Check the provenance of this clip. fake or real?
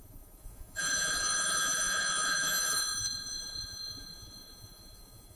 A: fake